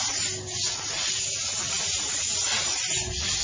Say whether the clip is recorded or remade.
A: recorded